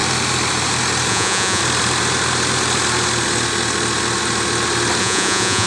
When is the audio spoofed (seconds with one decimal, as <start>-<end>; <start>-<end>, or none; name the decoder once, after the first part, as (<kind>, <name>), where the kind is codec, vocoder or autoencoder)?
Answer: 1.1-1.6 (vocoder, Vocos); 5.0-5.7